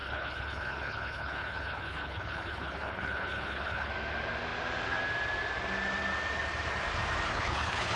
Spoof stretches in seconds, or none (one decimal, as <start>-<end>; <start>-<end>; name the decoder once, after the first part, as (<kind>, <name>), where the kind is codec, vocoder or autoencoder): 0.0-3.9 (codec, HILCodec); 7.3-8.0